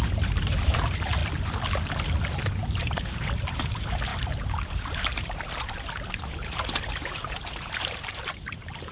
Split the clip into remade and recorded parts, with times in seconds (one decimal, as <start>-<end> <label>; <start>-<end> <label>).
0.0-1.2 remade; 1.2-2.3 recorded; 2.3-8.9 remade